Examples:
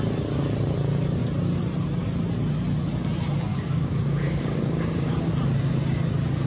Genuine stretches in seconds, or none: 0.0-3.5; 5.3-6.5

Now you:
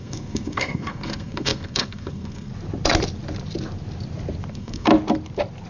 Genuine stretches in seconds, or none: 2.5-4.5; 4.9-5.7

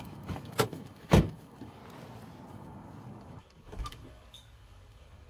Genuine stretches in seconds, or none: 1.8-2.5

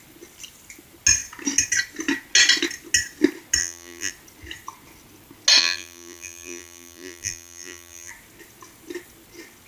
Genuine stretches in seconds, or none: 0.0-3.6; 4.1-5.6; 8.1-9.7

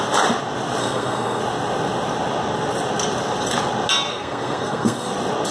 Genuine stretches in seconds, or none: 0.0-0.8; 1.4-4.1; 5.1-5.5

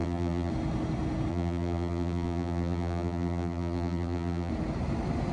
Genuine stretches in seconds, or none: 0.5-1.3; 4.5-5.3

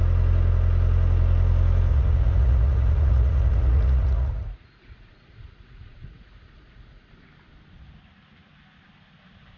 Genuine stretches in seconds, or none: 0.0-1.9; 7.1-9.6